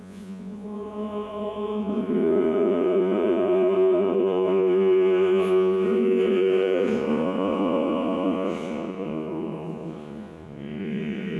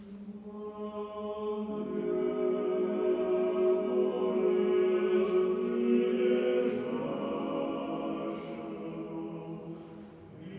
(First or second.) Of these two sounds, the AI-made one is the first